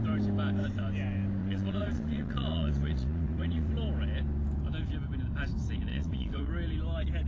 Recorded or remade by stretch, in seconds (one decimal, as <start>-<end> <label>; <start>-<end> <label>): 0.0-1.4 recorded; 1.4-3.7 remade; 3.7-5.9 recorded; 5.9-6.5 remade; 6.5-7.3 recorded